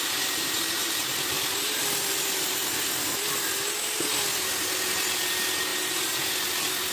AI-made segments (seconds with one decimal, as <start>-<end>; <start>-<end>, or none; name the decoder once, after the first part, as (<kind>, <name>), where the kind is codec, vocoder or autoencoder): 0.8-2.8 (vocoder, BigVGAN v2)